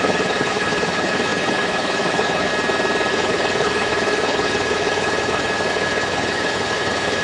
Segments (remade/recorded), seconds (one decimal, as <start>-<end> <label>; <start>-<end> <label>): 0.0-2.5 remade; 2.5-3.1 recorded; 3.1-7.2 remade